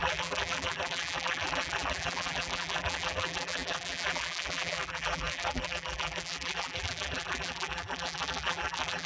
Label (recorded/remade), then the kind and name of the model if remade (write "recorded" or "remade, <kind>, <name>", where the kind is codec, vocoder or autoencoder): remade, vocoder, BigVGAN v2